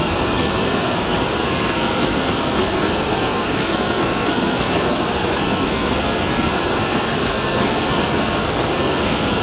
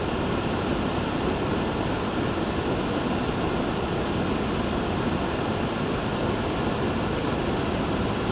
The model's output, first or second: first